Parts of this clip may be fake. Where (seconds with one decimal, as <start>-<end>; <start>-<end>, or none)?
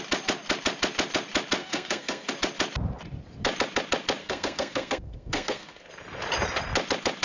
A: 1.6-2.3; 4.2-5.9